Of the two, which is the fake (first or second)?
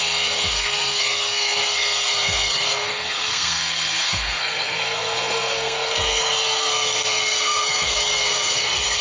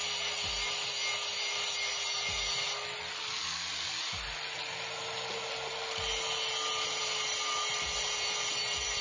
first